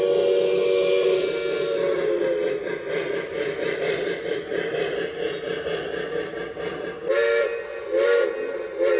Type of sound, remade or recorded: recorded